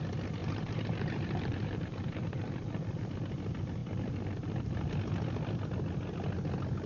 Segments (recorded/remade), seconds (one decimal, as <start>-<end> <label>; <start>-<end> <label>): 0.0-0.4 recorded; 0.4-3.1 remade; 3.1-3.8 recorded; 3.8-4.9 remade; 4.9-6.9 recorded